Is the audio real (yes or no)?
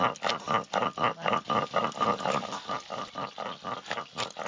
yes